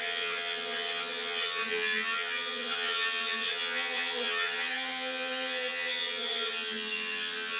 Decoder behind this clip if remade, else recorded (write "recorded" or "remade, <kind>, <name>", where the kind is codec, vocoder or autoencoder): remade, vocoder, HiFi-GAN